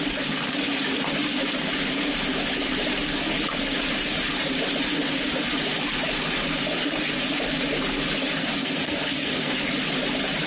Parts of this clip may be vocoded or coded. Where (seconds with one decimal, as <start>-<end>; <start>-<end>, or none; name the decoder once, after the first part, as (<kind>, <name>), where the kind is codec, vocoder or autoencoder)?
8.4-9.5 (codec, SNAC)